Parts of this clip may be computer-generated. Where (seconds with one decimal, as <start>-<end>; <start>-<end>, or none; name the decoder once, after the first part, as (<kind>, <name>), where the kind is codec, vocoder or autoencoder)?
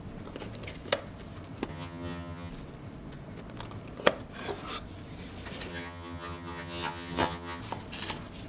1.7-2.5 (vocoder, HiFi-GAN); 5.7-7.6